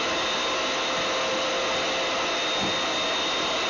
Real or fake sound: real